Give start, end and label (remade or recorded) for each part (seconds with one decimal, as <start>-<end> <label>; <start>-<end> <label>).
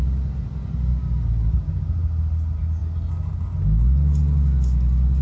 0.0-5.2 recorded